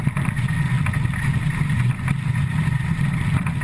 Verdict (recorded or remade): remade